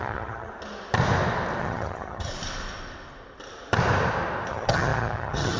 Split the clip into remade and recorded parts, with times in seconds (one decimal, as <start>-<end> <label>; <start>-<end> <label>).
0.0-0.5 remade; 0.5-1.6 recorded; 1.6-2.3 remade; 2.3-4.5 recorded; 4.5-5.6 remade